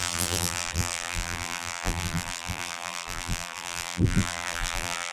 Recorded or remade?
remade